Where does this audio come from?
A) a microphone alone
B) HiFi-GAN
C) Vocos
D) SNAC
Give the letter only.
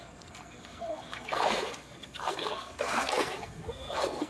D